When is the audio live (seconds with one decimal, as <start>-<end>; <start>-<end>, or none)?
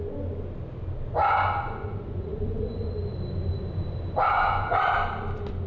0.0-1.2; 2.8-4.3; 4.8-5.7